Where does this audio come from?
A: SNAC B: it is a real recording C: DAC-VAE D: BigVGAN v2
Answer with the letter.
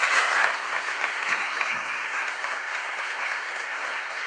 A